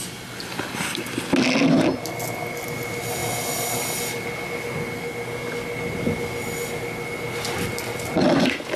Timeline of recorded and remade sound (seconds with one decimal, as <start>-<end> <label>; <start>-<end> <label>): 0.0-8.8 recorded